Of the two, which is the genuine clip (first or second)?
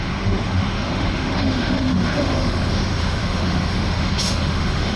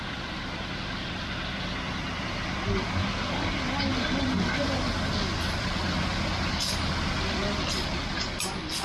second